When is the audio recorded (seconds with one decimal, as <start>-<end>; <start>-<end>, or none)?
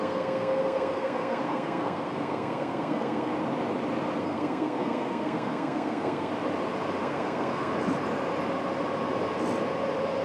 3.3-4.2; 6.3-7.0; 7.7-10.2